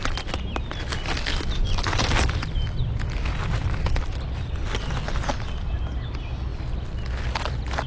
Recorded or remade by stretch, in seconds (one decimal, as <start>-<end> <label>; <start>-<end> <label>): 0.0-7.9 recorded